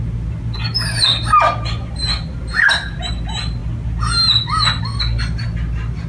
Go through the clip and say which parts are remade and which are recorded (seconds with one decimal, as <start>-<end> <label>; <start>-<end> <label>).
0.0-6.1 recorded